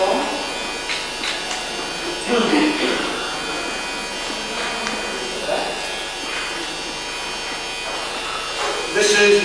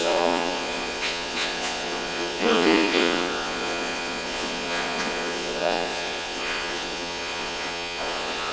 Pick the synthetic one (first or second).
second